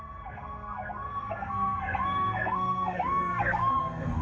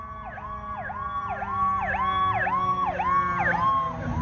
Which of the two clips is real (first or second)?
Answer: second